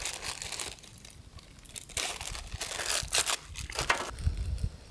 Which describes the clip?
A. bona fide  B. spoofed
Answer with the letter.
A